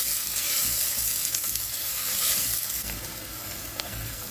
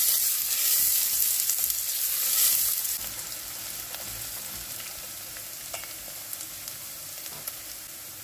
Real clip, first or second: second